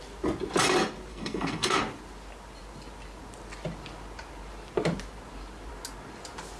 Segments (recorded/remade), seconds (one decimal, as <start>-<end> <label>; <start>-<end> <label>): 0.0-1.1 recorded; 1.1-1.8 remade; 1.8-6.6 recorded

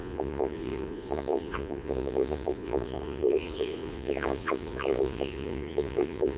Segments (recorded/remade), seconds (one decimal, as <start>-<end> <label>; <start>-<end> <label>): 0.0-6.4 remade

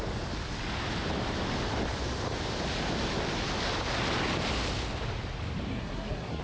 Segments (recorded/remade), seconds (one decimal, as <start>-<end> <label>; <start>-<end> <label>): 0.0-5.7 recorded; 5.7-6.4 remade